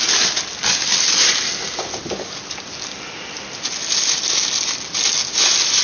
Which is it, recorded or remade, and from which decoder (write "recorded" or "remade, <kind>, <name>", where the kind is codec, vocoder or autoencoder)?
recorded